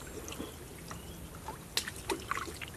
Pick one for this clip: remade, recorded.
recorded